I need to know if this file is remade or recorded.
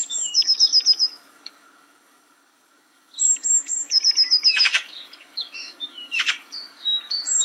remade